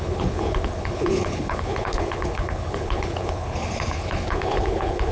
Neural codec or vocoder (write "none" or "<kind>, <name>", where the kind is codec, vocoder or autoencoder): codec, HILCodec